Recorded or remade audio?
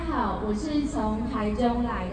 recorded